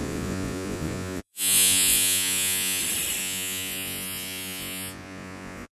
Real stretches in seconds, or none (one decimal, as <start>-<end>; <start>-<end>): 2.8-3.2

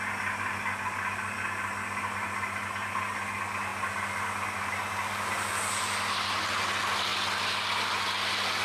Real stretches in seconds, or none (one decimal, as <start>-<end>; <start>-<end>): 0.0-8.6

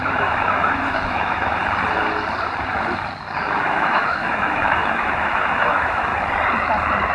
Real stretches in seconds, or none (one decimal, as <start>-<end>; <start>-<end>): 1.6-3.6; 6.1-7.1

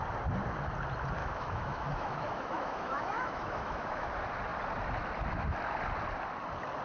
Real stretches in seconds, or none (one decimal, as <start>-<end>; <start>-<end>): 0.0-1.2; 4.1-6.8

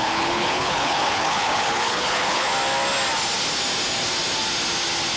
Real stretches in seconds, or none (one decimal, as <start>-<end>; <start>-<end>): 2.5-5.2